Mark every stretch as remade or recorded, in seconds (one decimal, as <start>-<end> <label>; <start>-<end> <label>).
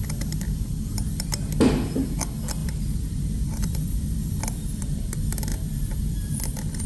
0.0-2.6 recorded; 2.6-4.4 remade; 4.4-5.5 recorded; 5.5-6.9 remade